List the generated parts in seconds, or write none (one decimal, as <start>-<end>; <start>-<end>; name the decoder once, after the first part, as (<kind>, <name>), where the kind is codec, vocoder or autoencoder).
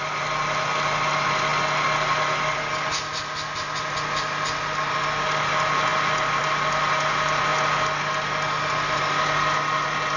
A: none